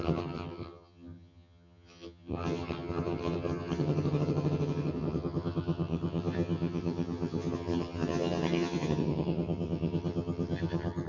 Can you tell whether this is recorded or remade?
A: remade